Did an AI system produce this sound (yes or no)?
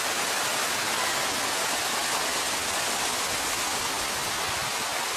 no